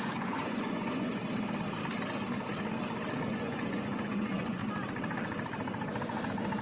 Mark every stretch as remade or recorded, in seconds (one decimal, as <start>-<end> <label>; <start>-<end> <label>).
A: 0.0-1.2 remade; 1.2-3.3 recorded; 3.3-4.6 remade; 4.6-6.6 recorded